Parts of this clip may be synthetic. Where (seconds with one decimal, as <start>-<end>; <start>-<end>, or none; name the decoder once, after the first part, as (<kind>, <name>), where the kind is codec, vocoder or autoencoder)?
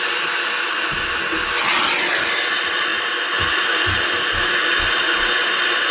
none